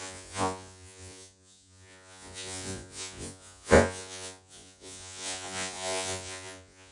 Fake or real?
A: fake